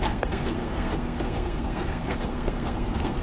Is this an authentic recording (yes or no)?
no